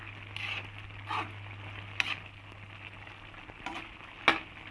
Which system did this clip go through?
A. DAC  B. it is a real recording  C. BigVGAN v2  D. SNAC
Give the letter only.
B